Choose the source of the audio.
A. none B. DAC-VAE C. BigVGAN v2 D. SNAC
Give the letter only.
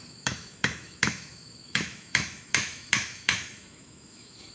B